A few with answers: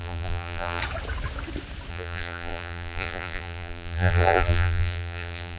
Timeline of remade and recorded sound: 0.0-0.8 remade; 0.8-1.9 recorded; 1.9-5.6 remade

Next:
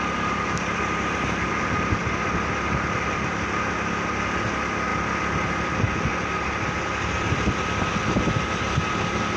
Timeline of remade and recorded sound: 0.0-9.4 recorded